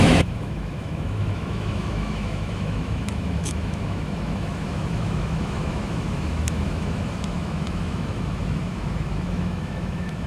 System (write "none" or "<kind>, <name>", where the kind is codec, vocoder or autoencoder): autoencoder, DAC-VAE